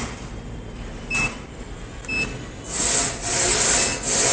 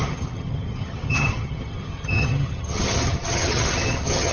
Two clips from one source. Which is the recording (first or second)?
first